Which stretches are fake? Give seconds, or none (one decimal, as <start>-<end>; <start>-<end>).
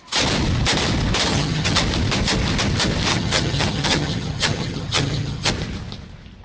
1.3-1.8; 3.1-5.5